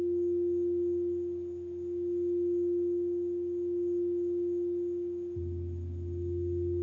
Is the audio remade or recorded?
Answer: recorded